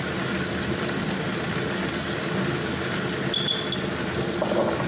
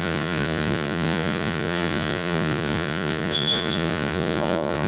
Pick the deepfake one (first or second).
second